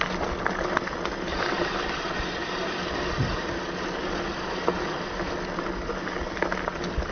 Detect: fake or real real